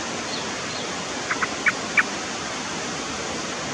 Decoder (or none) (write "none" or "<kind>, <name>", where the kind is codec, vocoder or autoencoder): none